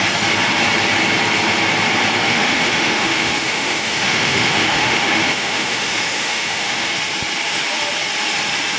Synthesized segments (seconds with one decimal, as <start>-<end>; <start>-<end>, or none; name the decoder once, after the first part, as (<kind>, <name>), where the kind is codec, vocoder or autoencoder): 2.2-6.9 (autoencoder, DAC-VAE)